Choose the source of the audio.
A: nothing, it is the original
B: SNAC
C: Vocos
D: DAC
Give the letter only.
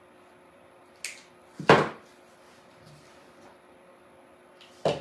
A